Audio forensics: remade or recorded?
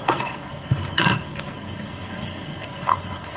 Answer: remade